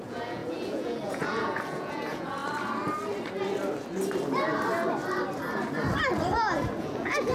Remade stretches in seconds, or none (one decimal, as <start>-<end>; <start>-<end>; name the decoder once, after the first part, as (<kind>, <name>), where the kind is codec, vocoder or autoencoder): 0.0-2.4 (vocoder, Vocos); 6.8-7.3